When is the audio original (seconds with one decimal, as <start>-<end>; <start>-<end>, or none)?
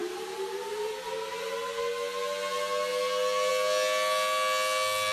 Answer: 1.8-5.1